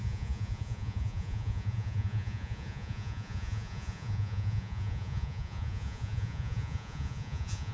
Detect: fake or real fake